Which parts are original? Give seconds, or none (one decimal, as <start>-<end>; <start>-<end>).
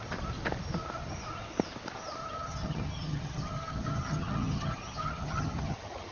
0.0-2.2